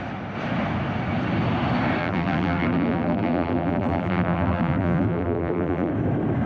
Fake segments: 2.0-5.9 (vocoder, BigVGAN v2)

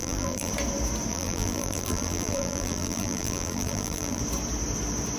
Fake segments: 0.0-0.5 (vocoder, BigVGAN v2); 1.1-4.2

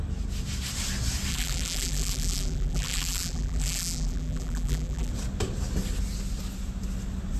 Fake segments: 1.3-5.1 (vocoder, BigVGAN v2)

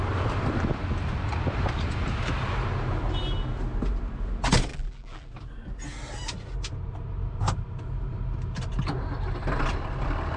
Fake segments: 4.7-5.3 (vocoder, BigVGAN v2)

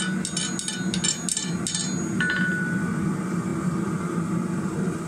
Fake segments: none

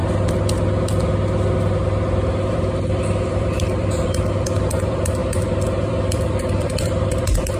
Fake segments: 2.5-7.6 (vocoder, BigVGAN v2)

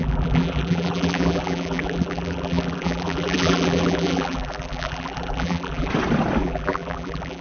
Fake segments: 0.0-5.9 (vocoder, BigVGAN v2); 6.4-7.4